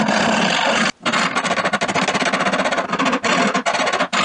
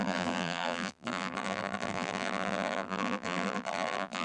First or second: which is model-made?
second